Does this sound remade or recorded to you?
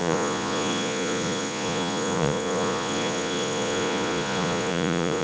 remade